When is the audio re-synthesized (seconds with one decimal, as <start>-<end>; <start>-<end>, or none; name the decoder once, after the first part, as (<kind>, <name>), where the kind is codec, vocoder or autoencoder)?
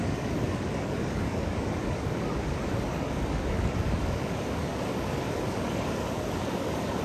0.0-7.0 (codec, DAC)